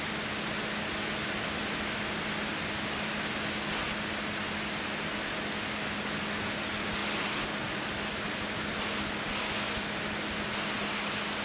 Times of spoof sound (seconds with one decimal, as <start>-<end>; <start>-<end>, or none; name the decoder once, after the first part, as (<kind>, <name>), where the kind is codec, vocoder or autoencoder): none